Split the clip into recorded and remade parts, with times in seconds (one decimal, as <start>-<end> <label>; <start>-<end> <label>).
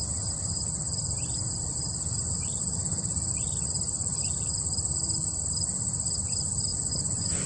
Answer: 0.0-6.7 recorded; 6.7-7.5 remade